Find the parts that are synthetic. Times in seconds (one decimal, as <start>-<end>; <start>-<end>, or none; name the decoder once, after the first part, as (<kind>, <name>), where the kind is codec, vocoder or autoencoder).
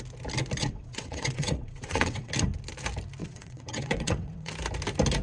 0.6-2.3 (vocoder, WaveNeXt); 3.2-4.5